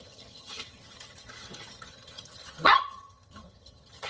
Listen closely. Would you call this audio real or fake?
fake